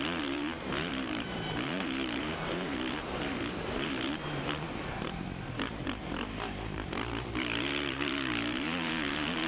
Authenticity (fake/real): fake